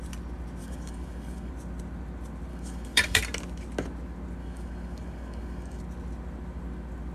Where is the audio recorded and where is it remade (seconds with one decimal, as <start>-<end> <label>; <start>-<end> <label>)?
0.0-0.6 recorded; 0.6-1.5 remade; 1.5-2.5 recorded; 2.5-3.2 remade; 3.2-4.4 recorded; 4.4-5.8 remade; 5.8-7.1 recorded

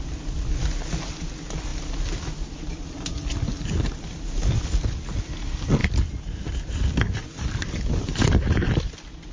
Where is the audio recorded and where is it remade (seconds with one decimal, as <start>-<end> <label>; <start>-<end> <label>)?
0.0-9.3 recorded